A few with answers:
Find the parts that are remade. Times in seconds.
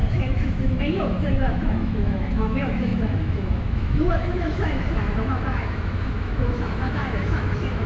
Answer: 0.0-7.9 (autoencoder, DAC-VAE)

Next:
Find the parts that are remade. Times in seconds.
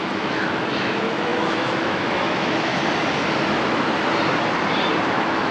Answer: 0.0-2.7 (autoencoder, DAC-VAE); 5.1-5.5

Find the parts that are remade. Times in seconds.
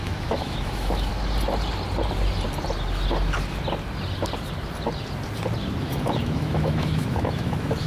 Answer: 0.0-1.1 (autoencoder, DAC-VAE); 5.8-7.9